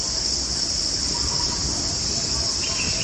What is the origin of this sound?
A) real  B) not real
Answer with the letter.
A